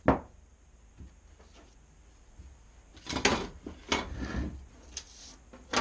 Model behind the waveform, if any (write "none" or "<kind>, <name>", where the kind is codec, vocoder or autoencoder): none